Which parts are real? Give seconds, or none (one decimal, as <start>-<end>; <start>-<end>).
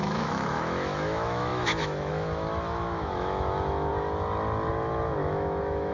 3.9-4.7